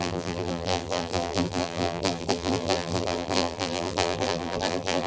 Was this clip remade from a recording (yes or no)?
yes